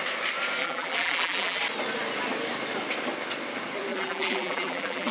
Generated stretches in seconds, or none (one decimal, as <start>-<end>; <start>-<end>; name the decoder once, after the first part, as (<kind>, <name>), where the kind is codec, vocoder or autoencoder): 0.6-1.6 (vocoder, BigVGAN v2); 3.9-5.1